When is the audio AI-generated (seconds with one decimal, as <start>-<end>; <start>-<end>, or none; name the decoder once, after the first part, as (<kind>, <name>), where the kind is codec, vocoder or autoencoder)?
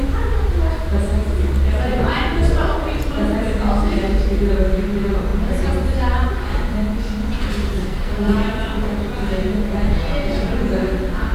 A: 7.6-8.3 (codec, SNAC)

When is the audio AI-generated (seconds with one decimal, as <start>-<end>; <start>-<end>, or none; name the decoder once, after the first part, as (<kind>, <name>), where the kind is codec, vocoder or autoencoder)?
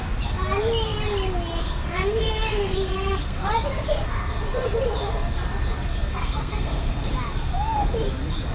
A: 1.6-3.5 (codec, SNAC); 6.2-6.9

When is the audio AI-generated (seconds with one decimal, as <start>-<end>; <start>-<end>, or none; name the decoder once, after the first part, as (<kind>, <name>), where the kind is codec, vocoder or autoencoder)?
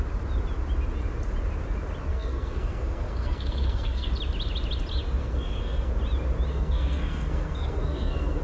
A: 2.1-4.1 (codec, SNAC); 5.2-5.9; 6.5-8.4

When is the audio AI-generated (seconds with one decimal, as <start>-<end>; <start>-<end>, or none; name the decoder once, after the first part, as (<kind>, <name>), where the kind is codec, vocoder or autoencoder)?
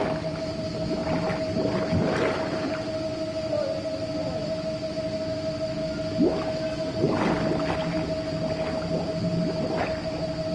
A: none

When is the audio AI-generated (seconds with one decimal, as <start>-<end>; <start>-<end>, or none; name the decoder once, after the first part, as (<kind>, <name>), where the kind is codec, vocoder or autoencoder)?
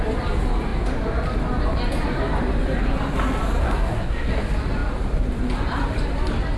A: 3.6-4.3 (codec, SNAC)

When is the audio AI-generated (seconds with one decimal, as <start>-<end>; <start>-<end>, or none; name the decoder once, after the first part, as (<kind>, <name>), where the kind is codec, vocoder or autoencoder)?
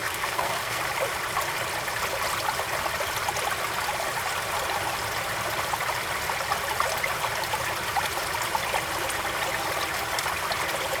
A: 0.0-0.8 (codec, SNAC)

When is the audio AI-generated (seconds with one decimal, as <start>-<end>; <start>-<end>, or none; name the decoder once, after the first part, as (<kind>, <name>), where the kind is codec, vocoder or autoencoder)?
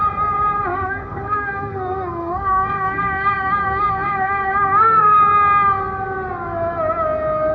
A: 0.7-5.2 (codec, SNAC)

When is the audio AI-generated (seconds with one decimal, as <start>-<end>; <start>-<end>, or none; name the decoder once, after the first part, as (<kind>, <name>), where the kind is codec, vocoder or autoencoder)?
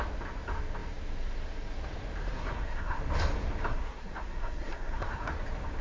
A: 2.2-3.0 (codec, SNAC); 3.7-5.3